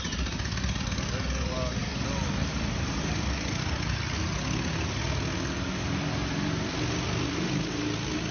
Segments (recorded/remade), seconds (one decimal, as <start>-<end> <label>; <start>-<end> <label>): 0.0-8.3 recorded